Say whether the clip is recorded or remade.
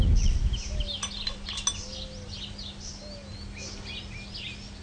recorded